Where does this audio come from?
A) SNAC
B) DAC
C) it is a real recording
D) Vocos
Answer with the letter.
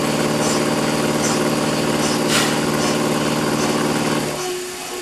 C